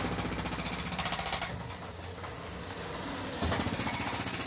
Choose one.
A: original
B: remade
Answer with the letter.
A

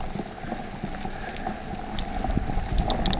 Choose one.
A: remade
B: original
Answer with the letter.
B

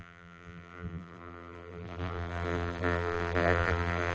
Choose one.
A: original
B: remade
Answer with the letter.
B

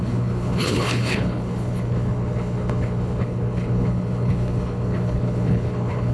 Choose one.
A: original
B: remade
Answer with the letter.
B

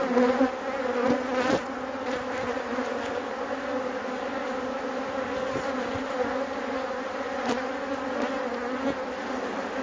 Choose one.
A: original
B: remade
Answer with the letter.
A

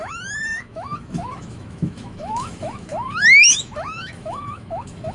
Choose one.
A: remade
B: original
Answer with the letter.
A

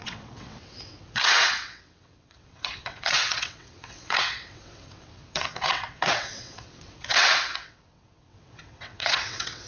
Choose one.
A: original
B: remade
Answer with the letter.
B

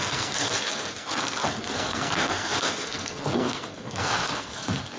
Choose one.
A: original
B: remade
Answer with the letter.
B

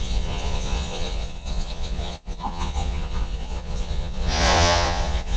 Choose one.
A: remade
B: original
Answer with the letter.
A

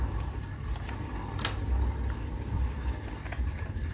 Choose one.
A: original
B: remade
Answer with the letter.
A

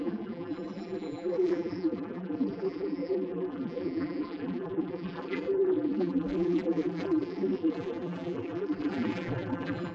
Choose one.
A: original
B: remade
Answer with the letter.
B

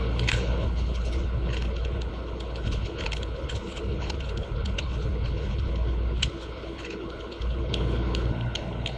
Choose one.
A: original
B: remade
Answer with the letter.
B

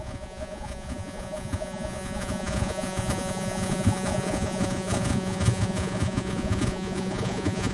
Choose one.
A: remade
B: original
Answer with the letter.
A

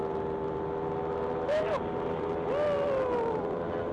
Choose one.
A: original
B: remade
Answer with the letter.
A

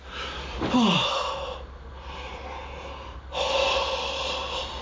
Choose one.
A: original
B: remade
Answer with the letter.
A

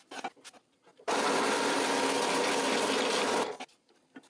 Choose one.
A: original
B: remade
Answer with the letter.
A